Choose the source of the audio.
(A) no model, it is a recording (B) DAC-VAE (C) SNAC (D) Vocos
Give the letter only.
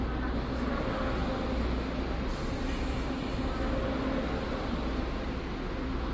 A